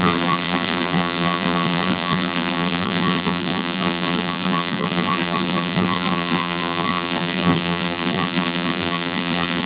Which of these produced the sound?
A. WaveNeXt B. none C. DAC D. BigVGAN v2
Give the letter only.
D